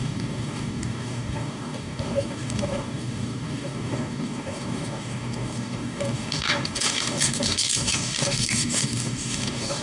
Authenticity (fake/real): fake